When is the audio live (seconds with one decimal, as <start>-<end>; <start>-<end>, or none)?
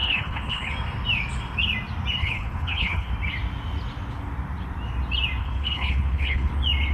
0.7-2.2; 3.1-5.4; 6.5-6.9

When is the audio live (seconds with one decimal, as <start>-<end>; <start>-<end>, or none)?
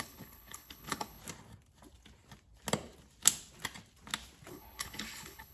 1.2-4.5